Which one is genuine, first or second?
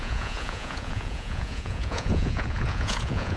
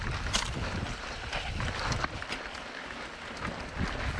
second